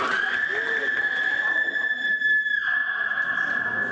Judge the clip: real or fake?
real